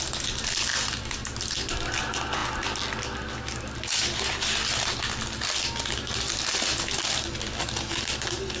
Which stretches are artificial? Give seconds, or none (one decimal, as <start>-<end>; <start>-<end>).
none